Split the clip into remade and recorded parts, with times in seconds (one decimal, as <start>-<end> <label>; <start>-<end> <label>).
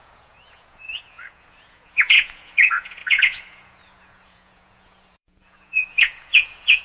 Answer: 0.0-6.8 remade